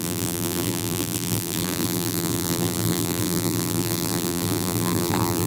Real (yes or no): no